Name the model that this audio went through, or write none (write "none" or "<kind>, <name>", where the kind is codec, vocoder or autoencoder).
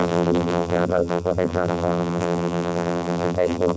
vocoder, BigVGAN v2